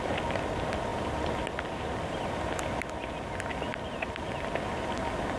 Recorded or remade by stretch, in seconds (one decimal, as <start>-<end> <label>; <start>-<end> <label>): 0.0-5.4 recorded